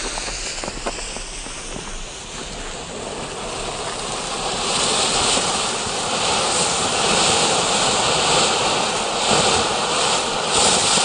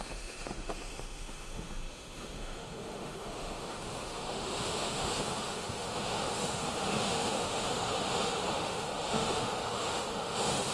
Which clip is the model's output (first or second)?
second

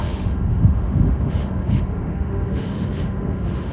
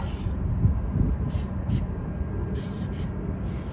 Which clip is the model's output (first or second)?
first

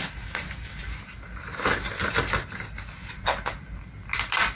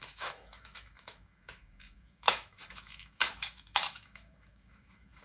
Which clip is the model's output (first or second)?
second